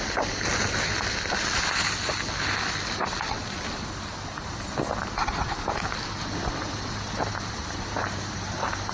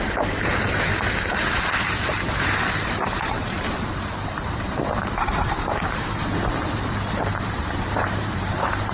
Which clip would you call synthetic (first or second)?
second